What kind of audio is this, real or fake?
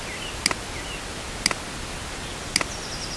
real